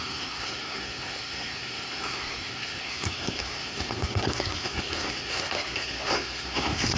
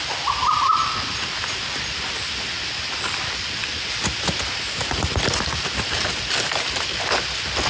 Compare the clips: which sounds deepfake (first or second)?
first